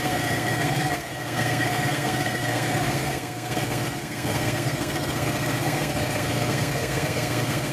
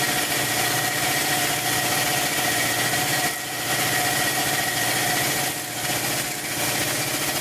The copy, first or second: first